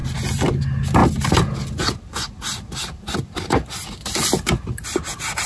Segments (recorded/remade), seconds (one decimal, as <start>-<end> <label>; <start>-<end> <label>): 0.0-5.5 recorded